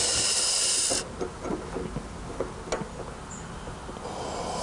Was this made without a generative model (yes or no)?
yes